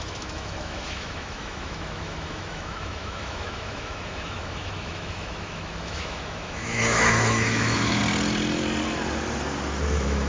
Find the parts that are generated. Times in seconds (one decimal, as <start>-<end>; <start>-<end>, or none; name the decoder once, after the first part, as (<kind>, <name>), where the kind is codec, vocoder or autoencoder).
0.0-8.0 (autoencoder, DAC-VAE); 9.9-10.3